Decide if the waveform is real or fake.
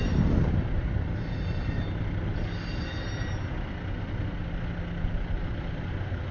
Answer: real